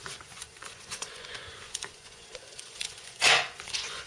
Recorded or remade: remade